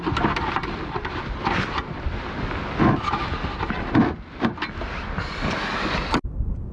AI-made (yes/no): no